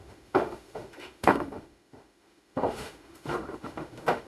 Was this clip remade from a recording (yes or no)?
yes